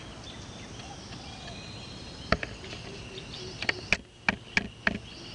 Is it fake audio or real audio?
real